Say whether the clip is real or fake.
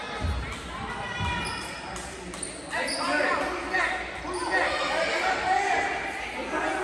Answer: real